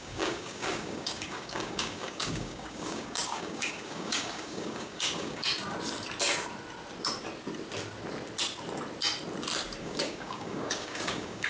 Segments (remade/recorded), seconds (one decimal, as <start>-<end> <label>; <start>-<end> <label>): 0.0-5.5 remade; 5.5-9.8 recorded; 9.8-11.5 remade